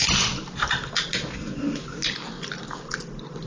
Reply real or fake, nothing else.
real